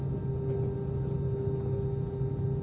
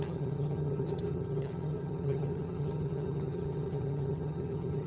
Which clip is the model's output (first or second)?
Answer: second